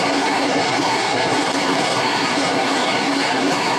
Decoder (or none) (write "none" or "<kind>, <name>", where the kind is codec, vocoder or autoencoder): codec, SNAC